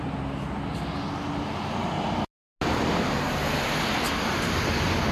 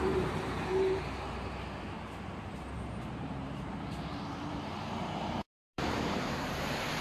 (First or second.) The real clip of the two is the first